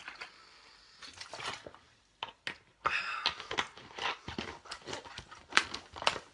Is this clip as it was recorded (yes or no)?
yes